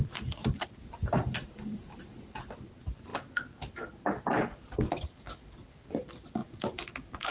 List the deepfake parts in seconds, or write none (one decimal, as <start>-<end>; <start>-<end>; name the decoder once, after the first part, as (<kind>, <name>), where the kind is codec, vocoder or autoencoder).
0.0-3.1 (vocoder, BigVGAN v2); 4.7-6.4